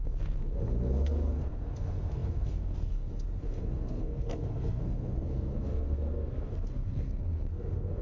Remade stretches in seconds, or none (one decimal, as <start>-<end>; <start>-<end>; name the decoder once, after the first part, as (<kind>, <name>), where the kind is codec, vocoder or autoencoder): 0.0-8.0 (codec, SNAC)